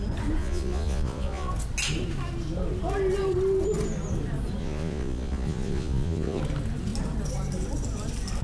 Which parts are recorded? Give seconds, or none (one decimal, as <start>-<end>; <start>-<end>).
0.0-0.4; 1.5-4.6; 6.4-8.4